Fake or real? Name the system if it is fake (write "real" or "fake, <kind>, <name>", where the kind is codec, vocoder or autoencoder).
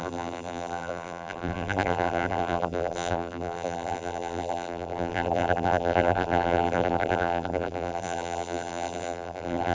fake, vocoder, BigVGAN v2